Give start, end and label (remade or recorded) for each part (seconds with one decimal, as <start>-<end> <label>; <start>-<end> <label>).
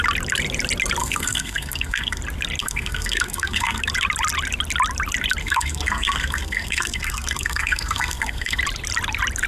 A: 0.0-1.0 recorded; 1.0-2.2 remade; 2.2-2.6 recorded; 2.6-3.8 remade; 3.8-5.4 recorded; 5.4-8.6 remade; 8.6-9.5 recorded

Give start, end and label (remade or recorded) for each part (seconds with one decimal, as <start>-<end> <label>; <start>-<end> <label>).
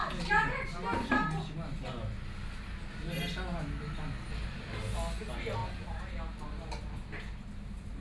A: 0.0-8.0 recorded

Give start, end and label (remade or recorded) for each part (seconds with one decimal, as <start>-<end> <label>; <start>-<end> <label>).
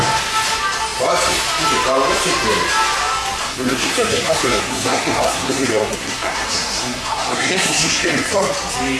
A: 0.0-3.4 recorded; 3.4-8.5 remade; 8.5-9.0 recorded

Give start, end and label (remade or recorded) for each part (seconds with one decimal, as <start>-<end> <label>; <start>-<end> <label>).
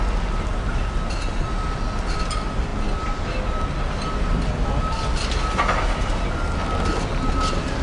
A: 0.0-7.8 recorded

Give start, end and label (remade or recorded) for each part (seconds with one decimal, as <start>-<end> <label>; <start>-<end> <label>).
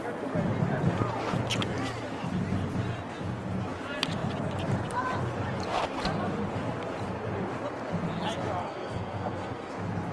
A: 0.0-8.6 recorded; 8.6-9.7 remade; 9.7-10.1 recorded